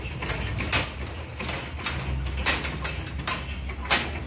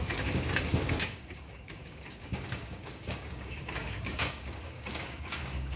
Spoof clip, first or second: second